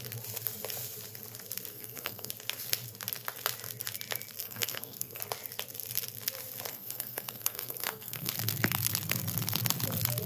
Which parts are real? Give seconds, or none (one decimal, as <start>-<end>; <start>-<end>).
0.0-1.7; 2.3-4.4; 5.2-6.7; 8.3-10.3